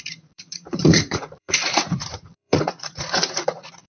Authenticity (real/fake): fake